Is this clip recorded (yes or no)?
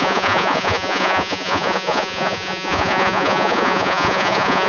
no